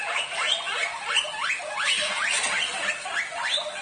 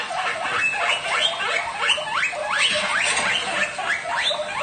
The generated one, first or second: first